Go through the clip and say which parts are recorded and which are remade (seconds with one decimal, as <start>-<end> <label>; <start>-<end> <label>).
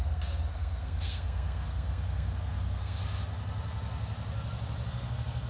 0.0-3.0 remade; 3.0-4.9 recorded; 4.9-5.5 remade